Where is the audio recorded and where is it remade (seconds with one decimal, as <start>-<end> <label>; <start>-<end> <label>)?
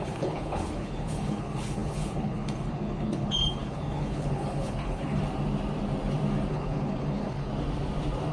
0.0-5.2 remade; 5.2-6.5 recorded; 6.5-7.5 remade; 7.5-8.3 recorded